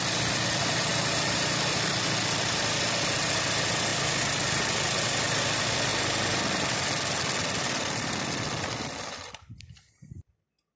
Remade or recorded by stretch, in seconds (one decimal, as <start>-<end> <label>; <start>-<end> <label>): 0.0-10.8 recorded